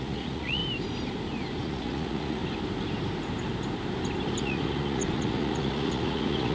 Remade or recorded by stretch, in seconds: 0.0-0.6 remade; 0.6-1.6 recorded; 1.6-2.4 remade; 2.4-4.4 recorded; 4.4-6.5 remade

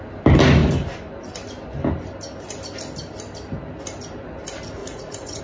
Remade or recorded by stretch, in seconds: 0.0-4.8 recorded; 4.8-5.4 remade

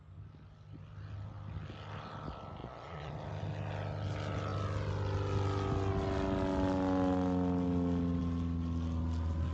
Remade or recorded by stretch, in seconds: 0.0-2.6 recorded; 2.6-3.1 remade; 3.1-9.5 recorded

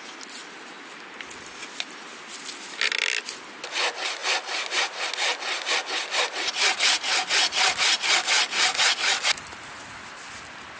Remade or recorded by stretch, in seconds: 0.0-10.8 recorded

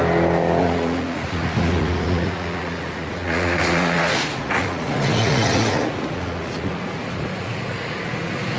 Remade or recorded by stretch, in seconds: 0.0-0.6 recorded; 0.6-8.6 remade

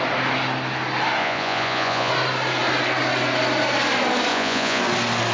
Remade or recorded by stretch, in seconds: 0.0-1.2 recorded; 1.2-2.1 remade; 2.1-4.3 recorded; 4.3-4.8 remade; 4.8-5.3 recorded

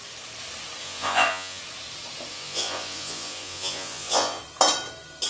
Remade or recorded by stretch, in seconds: 0.0-0.8 recorded; 0.8-1.6 remade; 1.6-2.3 recorded; 2.3-4.4 remade; 4.4-5.3 recorded

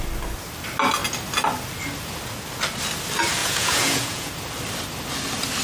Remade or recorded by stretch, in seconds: 0.0-3.4 recorded; 3.4-4.3 remade; 4.3-5.6 recorded